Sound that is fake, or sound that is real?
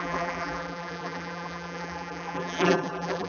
fake